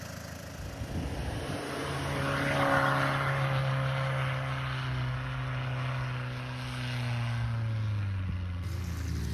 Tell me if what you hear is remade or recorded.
recorded